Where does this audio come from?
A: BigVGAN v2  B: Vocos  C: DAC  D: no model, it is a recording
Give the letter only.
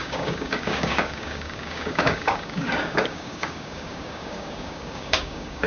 C